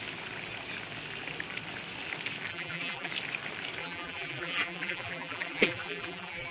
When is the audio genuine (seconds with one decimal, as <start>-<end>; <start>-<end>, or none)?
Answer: 0.0-2.5; 3.1-3.8